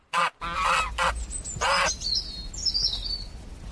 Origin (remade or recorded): recorded